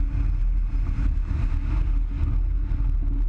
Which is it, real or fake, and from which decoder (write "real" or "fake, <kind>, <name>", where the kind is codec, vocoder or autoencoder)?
real